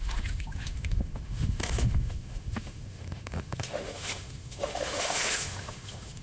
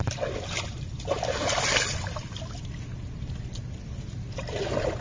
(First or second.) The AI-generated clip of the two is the first